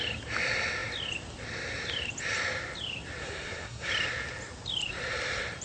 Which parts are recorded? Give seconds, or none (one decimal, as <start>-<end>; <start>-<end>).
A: 0.0-3.2; 3.9-5.6